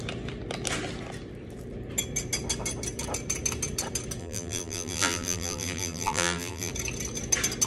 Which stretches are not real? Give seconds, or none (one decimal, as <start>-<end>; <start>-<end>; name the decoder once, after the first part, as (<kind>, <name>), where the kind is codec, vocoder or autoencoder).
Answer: 4.2-6.7 (vocoder, BigVGAN v2)